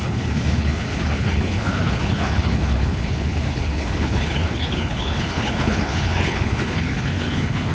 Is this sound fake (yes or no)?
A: yes